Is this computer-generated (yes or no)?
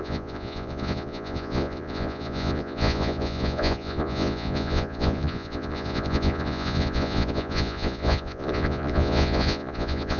yes